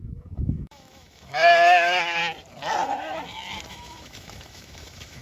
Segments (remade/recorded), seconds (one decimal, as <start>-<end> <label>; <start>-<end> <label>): 0.0-2.2 remade; 2.2-3.7 recorded; 3.7-5.2 remade